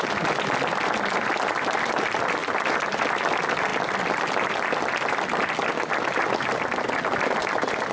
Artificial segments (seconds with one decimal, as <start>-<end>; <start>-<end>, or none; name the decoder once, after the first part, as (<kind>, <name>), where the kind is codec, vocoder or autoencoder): none